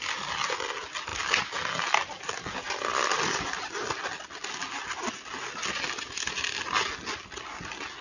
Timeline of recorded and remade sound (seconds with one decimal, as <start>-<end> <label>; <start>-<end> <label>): 0.0-8.0 recorded